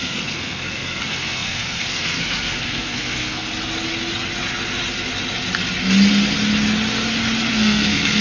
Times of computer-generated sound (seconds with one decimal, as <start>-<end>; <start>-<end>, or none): 0.0-3.5; 7.5-8.2